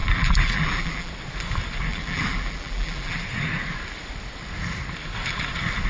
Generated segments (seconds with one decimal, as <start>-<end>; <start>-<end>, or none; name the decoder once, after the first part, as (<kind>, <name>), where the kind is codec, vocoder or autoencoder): 0.0-1.1 (vocoder, BigVGAN v2); 1.9-3.2